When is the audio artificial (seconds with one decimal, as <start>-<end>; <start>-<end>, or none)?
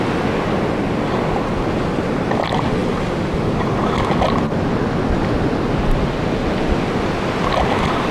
none